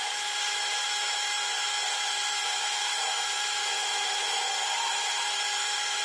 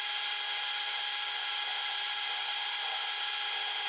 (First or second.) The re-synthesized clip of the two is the first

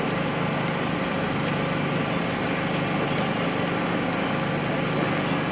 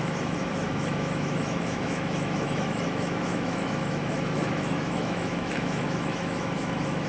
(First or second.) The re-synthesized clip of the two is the second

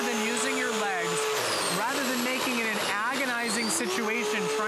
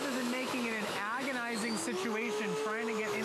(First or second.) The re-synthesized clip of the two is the second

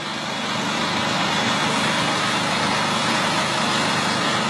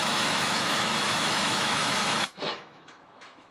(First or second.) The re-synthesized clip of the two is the second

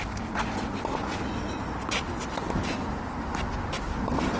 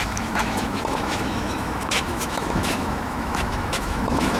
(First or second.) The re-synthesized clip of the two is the second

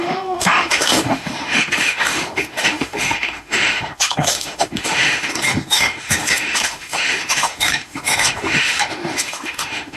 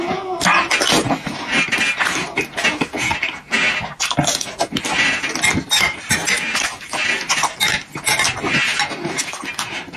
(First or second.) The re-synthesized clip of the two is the first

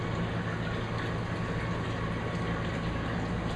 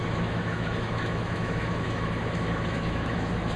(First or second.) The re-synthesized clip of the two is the second